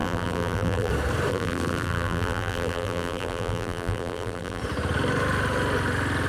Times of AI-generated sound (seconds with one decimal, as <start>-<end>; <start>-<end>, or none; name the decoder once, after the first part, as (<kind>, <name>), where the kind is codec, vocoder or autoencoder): 0.0-0.9 (vocoder, BigVGAN v2); 1.3-4.6